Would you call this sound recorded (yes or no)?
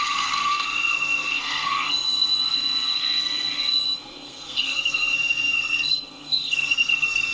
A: no